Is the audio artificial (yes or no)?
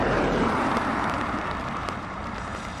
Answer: yes